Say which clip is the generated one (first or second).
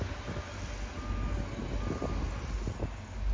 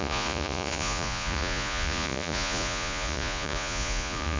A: second